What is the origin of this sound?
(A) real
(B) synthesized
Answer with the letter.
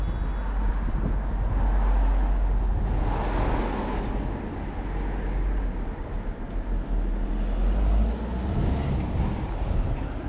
A